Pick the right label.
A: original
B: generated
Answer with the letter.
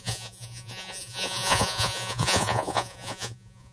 B